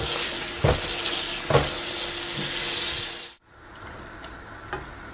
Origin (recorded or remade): recorded